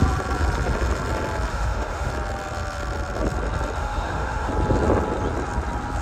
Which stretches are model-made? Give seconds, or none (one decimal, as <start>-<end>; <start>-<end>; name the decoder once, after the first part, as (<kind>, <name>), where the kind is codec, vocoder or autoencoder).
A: 1.5-2.1 (autoencoder, DAC-VAE); 3.8-4.5